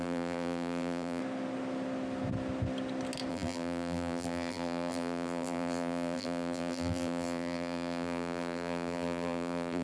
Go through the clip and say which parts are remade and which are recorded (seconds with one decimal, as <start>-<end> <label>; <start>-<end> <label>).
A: 0.0-1.2 remade; 1.2-3.3 recorded; 3.3-9.8 remade